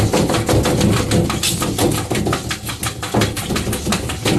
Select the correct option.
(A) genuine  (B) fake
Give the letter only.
A